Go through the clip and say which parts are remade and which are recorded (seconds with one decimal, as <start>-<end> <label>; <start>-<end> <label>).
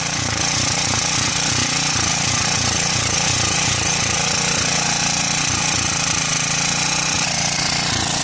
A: 0.0-8.2 recorded